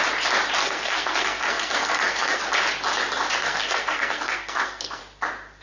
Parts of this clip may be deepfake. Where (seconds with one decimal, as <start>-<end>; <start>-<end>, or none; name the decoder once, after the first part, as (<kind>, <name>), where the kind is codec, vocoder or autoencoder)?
0.6-2.5 (codec, SNAC); 3.4-5.0